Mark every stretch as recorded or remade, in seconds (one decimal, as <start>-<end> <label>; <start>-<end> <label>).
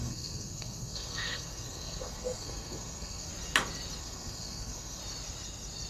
0.0-3.3 remade; 3.3-4.0 recorded; 4.0-5.0 remade; 5.0-5.9 recorded